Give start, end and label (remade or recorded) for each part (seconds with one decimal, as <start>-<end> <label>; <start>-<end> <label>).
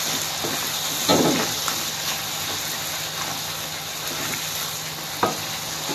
0.0-5.9 recorded